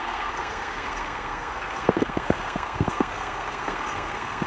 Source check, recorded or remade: remade